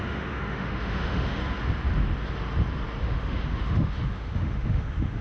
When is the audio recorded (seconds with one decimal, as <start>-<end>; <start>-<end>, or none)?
1.4-3.0